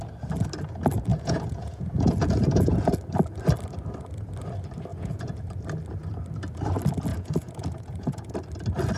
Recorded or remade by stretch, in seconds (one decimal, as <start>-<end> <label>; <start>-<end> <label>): 0.0-1.1 recorded; 1.1-2.9 remade; 2.9-4.9 recorded; 4.9-5.4 remade; 5.4-7.1 recorded; 7.1-8.3 remade; 8.3-9.0 recorded